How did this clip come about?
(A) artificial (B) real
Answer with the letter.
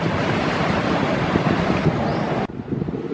B